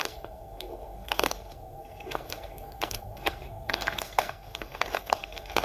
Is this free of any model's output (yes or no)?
no